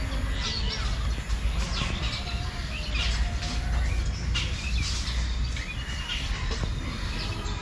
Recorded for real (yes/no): yes